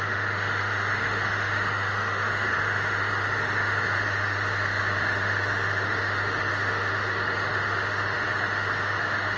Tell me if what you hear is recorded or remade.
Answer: remade